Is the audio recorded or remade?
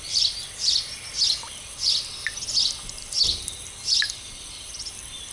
recorded